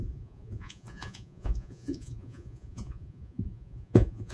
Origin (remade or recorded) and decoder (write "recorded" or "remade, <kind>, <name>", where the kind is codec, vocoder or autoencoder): remade, vocoder, Vocos